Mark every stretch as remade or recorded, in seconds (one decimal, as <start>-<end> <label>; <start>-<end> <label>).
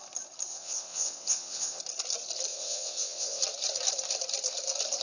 0.0-0.5 recorded; 0.5-1.8 remade; 1.8-2.5 recorded; 2.5-3.4 remade; 3.4-5.0 recorded